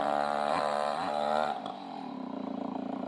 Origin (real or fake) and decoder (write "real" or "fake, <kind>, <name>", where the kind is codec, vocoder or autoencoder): fake, vocoder, BigVGAN v2